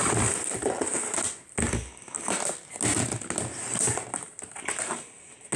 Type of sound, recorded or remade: recorded